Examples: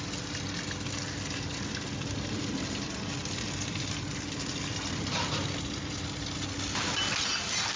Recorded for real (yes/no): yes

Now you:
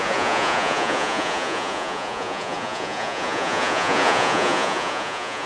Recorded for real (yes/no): no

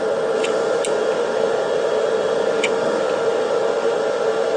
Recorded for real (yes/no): yes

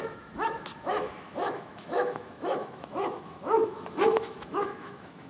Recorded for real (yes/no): no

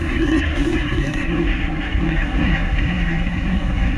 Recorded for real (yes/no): no